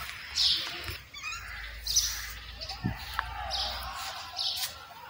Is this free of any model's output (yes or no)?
yes